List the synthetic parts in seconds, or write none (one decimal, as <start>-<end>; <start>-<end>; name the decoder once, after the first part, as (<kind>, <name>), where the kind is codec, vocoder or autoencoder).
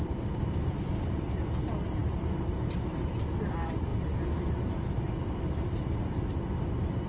none